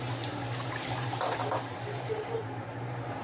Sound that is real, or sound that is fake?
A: fake